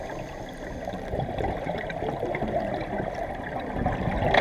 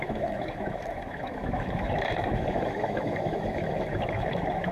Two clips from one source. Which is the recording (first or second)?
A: first